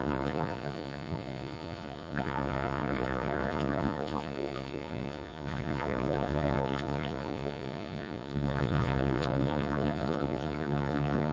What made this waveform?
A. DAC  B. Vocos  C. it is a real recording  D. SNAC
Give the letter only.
B